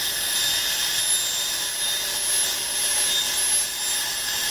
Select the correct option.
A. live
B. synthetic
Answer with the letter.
A